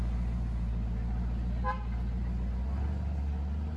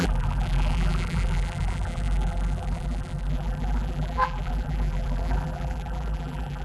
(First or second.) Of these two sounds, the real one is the first